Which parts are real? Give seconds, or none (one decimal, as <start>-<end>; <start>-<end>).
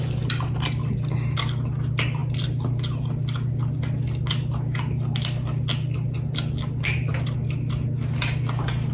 0.0-8.9